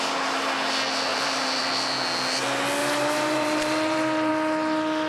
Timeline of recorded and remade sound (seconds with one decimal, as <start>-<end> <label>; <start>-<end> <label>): 0.0-1.1 recorded; 1.1-1.6 remade; 1.6-2.8 recorded; 2.8-4.3 remade; 4.3-5.1 recorded